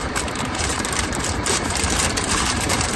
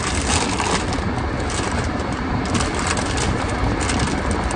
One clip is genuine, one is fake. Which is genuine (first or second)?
second